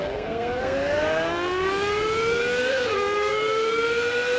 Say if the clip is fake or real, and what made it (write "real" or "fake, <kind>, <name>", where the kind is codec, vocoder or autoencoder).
fake, codec, SNAC